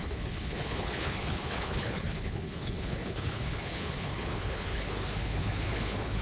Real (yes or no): no